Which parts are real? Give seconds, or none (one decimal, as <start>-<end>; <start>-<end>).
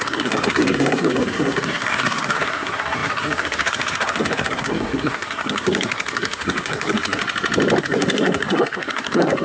7.2-7.8